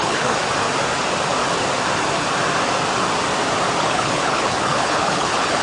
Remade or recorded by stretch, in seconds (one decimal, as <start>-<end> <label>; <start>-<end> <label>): 0.0-0.4 remade; 0.4-3.8 recorded; 3.8-5.6 remade